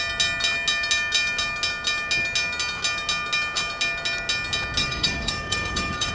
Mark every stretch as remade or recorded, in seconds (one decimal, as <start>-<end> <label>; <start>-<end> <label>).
0.0-4.8 recorded; 4.8-6.1 remade